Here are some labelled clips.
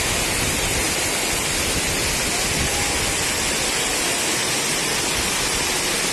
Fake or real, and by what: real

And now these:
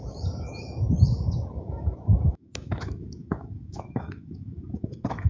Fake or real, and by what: fake, autoencoder, DAC-VAE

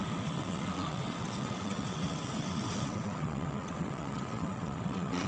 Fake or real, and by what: fake, vocoder, WaveNeXt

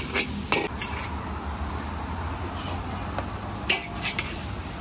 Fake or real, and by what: real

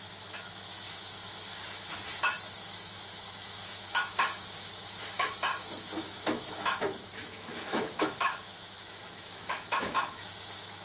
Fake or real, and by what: fake, autoencoder, DAC-VAE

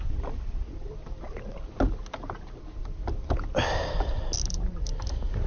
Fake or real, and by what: real